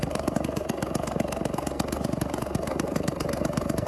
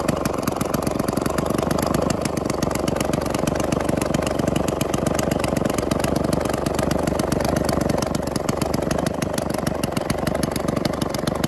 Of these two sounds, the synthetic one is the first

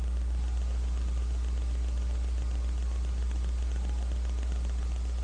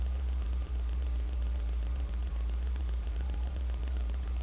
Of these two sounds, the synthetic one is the second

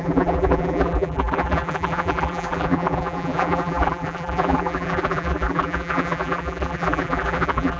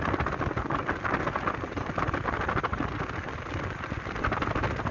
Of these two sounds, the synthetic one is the first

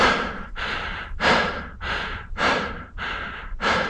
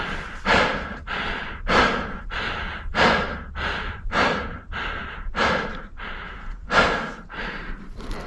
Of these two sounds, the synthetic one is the first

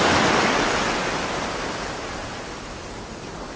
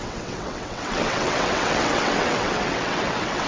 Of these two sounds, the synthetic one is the second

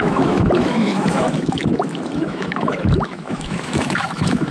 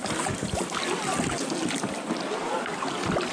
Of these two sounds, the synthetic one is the first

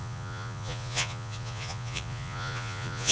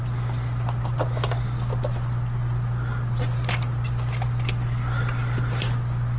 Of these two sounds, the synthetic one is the first